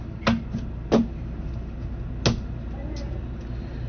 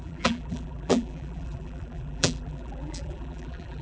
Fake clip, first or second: second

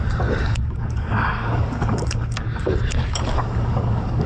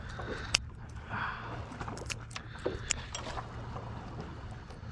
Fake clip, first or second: first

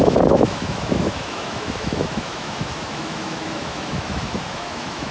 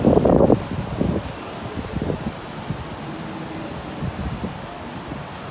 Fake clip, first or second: first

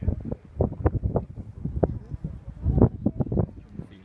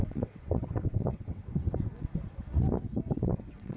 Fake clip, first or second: second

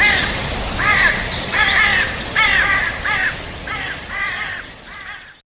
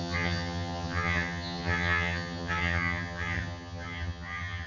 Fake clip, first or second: second